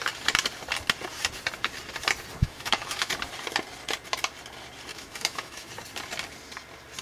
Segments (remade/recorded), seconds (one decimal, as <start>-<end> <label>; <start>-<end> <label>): 0.0-2.4 recorded; 2.4-3.1 remade; 3.1-4.9 recorded; 4.9-5.7 remade; 5.7-7.0 recorded